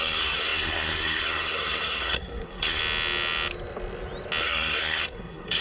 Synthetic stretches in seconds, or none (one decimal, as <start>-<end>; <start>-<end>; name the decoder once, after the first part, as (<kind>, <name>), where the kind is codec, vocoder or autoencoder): 0.0-2.8 (codec, SNAC); 4.4-5.6